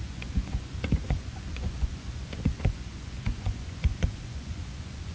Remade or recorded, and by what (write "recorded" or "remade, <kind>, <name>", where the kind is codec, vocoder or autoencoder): remade, vocoder, Vocos